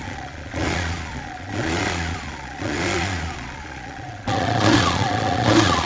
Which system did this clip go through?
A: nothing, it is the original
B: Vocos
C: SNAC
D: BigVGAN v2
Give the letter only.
B